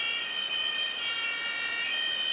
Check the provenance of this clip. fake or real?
real